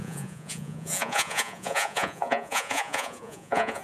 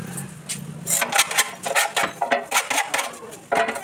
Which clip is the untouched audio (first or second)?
second